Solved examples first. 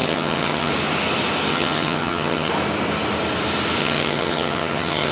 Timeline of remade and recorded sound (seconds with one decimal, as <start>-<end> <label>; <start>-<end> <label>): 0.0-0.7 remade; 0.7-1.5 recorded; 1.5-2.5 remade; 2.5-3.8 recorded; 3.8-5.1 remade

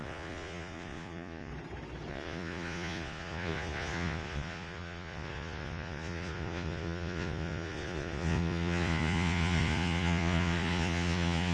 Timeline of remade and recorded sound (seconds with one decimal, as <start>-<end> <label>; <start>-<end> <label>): 0.0-1.5 remade; 1.5-2.1 recorded; 2.1-11.5 remade

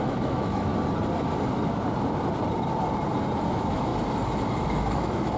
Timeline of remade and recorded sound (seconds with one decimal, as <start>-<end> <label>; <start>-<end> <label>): 0.0-0.7 remade; 0.7-3.5 recorded; 3.5-3.9 remade; 3.9-4.8 recorded; 4.8-5.4 remade

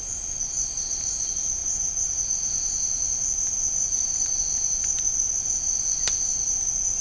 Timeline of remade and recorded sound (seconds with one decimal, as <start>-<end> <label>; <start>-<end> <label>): 0.0-7.0 recorded